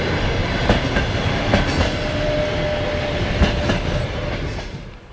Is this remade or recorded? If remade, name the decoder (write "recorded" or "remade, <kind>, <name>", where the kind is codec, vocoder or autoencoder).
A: recorded